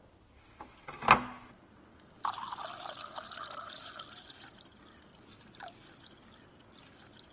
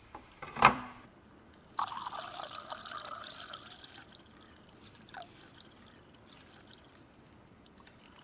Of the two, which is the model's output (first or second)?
second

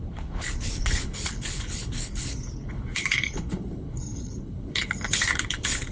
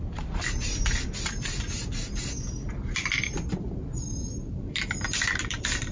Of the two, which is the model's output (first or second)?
first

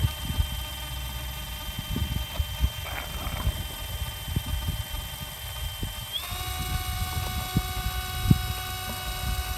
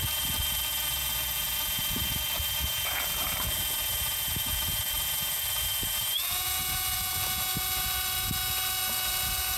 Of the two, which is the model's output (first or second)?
second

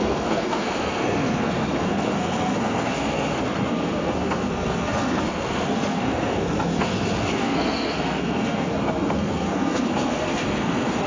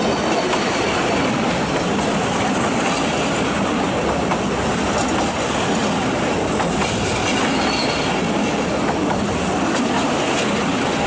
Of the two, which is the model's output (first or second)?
first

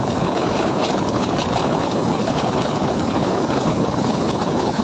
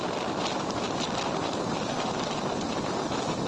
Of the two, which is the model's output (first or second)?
first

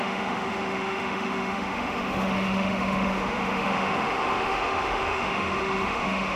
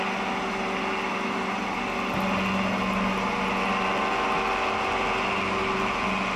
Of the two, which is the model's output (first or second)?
first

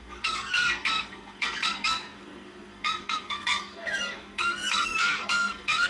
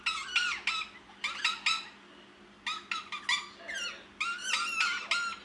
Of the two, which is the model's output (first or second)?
first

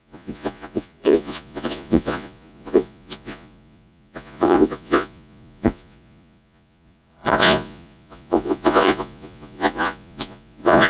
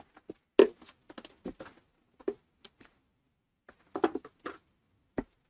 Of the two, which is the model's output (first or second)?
first